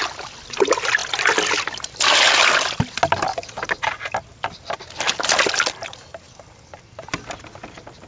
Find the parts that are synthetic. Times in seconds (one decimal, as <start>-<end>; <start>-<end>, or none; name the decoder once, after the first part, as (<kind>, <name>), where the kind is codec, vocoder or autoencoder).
none